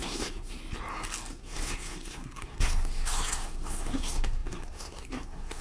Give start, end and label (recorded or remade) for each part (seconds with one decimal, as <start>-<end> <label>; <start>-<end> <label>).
0.0-0.6 remade; 0.6-1.3 recorded; 1.3-5.6 remade